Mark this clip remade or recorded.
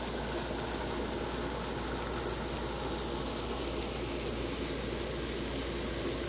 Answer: recorded